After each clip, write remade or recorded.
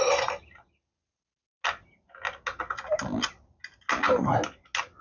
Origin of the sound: recorded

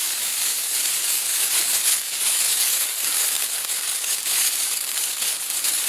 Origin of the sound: remade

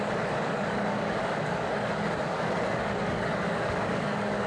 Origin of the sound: remade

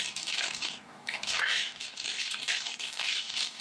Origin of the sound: remade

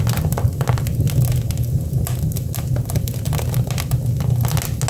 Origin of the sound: recorded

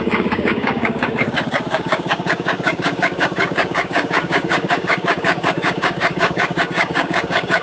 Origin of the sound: remade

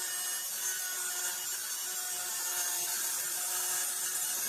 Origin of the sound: recorded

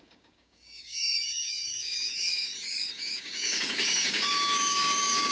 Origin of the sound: remade